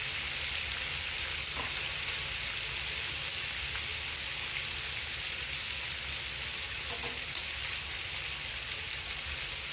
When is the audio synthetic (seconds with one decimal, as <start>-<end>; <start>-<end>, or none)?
none